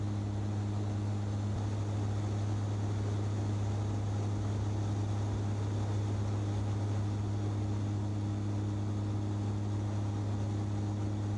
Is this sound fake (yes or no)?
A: no